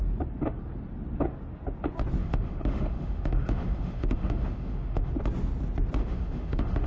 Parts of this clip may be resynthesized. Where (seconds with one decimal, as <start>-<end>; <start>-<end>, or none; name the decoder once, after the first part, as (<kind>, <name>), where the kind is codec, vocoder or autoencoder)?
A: 2.2-5.1 (autoencoder, DAC-VAE); 6.0-6.9